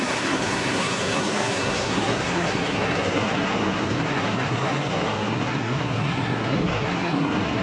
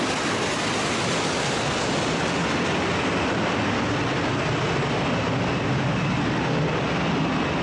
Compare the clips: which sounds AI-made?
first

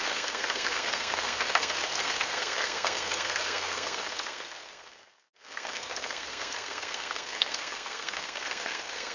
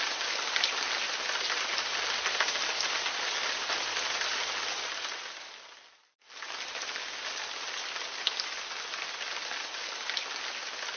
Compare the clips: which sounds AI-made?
first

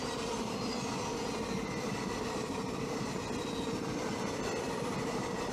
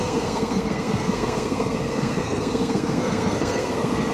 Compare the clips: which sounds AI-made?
second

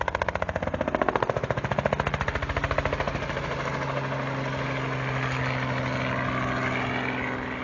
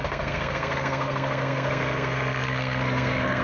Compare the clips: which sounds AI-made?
second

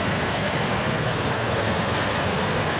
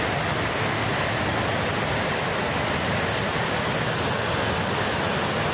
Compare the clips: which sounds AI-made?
first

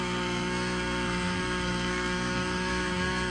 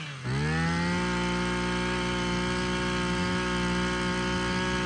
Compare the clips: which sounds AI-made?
first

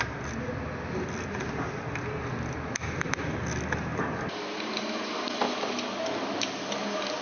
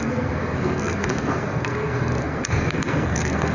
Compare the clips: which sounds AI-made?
second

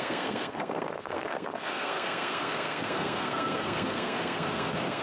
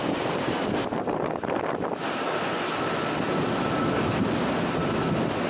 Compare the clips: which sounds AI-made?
first